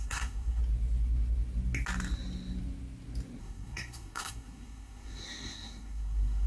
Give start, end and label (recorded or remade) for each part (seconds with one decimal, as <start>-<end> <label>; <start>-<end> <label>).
0.0-0.6 remade; 0.6-3.4 recorded; 3.4-6.5 remade